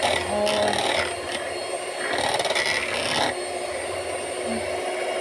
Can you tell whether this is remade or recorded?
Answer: recorded